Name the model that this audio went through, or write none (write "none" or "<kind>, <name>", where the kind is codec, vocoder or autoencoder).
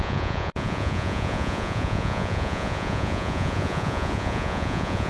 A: vocoder, Vocos